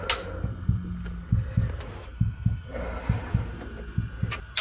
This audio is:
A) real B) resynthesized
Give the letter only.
A